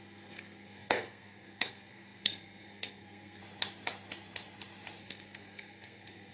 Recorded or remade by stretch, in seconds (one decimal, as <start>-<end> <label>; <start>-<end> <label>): 0.0-3.4 remade; 3.4-5.0 recorded; 5.0-6.3 remade